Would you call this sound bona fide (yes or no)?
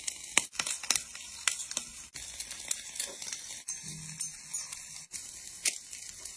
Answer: yes